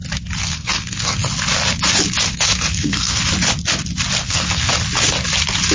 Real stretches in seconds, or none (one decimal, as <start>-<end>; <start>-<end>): 0.0-0.4; 1.3-2.3; 3.2-4.2; 4.7-5.7

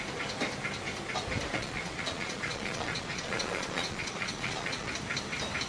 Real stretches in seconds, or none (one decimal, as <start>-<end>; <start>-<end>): 0.0-1.5; 4.9-5.7